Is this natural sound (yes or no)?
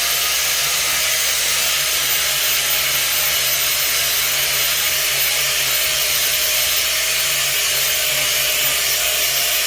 yes